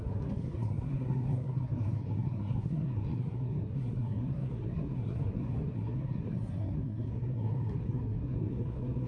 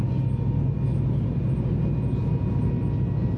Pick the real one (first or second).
second